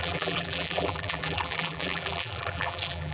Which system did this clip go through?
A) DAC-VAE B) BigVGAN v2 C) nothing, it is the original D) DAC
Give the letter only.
B